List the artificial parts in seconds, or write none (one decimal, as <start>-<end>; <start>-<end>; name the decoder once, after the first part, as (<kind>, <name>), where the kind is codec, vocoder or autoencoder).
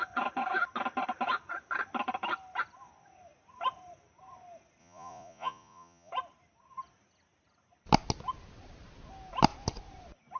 4.8-6.1 (vocoder, Vocos)